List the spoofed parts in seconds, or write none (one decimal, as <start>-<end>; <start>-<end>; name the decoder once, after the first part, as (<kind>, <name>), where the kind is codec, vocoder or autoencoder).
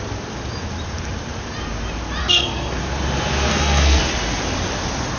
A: 2.2-2.8 (codec, SNAC); 3.5-4.0